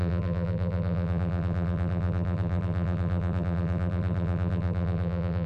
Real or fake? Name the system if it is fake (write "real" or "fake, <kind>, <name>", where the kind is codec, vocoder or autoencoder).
fake, vocoder, BigVGAN v2